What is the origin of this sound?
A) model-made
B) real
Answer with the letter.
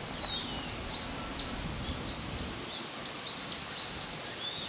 B